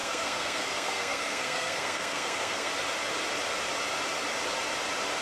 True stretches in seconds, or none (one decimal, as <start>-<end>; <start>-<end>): 2.7-5.2